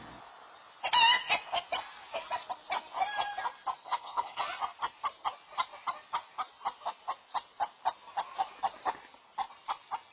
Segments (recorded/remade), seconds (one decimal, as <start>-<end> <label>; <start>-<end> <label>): 0.0-3.8 recorded; 3.8-4.4 remade; 4.4-10.1 recorded